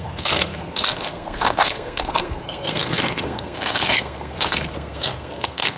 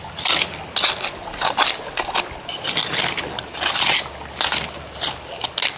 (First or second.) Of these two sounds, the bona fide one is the second